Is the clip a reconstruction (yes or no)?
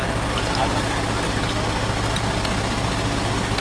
no